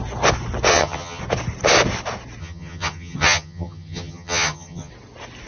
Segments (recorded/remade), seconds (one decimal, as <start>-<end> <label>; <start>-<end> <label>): 0.0-0.7 recorded; 0.7-1.2 remade; 1.2-2.4 recorded; 2.4-4.9 remade; 4.9-5.5 recorded